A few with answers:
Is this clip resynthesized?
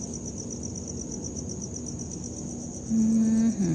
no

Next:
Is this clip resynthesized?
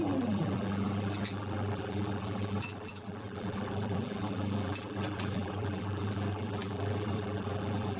yes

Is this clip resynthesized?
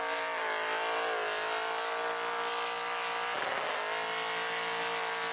no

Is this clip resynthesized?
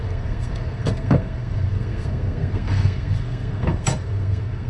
yes